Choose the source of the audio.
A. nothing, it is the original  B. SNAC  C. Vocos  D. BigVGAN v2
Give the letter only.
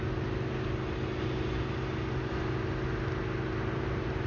A